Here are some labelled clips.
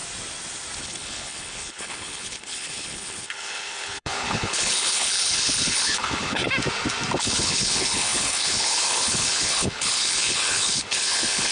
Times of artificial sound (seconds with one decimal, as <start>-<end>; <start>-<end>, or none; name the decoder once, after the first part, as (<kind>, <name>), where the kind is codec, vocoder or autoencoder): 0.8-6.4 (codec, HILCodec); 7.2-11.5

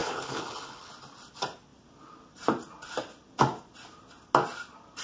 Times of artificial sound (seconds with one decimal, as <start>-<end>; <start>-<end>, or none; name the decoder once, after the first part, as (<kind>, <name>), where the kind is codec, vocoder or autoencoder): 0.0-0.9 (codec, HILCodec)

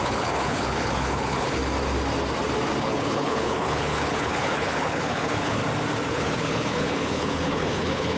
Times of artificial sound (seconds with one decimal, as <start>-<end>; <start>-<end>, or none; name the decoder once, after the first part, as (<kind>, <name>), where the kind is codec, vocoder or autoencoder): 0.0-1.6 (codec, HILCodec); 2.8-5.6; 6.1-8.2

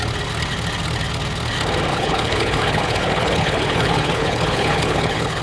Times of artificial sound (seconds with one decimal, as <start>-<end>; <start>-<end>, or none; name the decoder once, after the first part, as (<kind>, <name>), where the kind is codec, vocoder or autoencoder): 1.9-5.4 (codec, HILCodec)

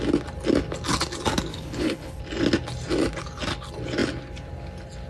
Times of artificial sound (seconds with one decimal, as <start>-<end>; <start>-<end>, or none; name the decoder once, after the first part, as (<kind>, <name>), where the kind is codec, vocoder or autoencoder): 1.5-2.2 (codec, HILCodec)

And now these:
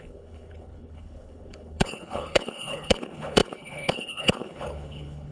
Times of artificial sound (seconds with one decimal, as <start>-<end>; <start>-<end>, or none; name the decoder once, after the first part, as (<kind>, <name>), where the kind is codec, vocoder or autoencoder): 0.0-5.3 (codec, HILCodec)